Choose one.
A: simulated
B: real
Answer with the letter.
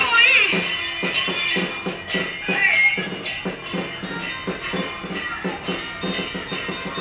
B